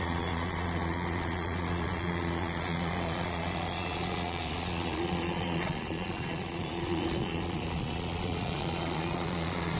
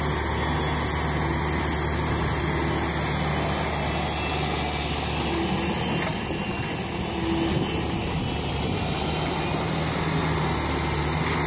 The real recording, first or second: second